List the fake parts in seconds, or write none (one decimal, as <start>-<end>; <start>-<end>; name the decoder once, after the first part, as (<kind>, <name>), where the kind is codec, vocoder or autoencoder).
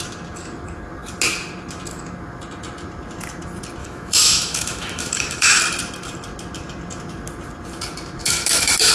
3.8-5.6 (autoencoder, DAC-VAE); 8.2-8.9